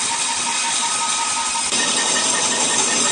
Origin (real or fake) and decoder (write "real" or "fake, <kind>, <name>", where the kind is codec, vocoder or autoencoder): real